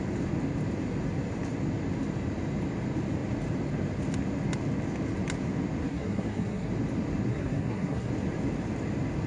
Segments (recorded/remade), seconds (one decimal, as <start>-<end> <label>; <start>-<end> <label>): 0.0-5.8 recorded; 5.8-6.7 remade; 6.7-7.3 recorded; 7.3-8.1 remade; 8.1-9.3 recorded